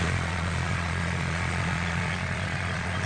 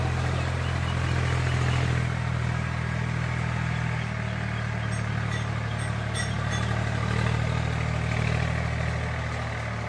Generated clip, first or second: first